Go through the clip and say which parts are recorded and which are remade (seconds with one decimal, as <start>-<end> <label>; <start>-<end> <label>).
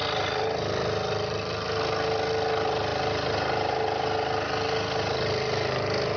0.0-6.2 recorded